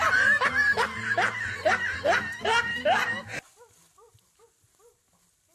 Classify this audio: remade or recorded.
recorded